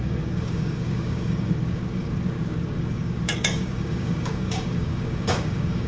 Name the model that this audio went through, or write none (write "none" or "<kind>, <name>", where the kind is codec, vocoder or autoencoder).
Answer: codec, DAC